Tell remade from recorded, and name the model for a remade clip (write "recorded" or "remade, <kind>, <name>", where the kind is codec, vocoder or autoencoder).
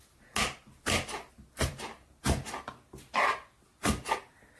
recorded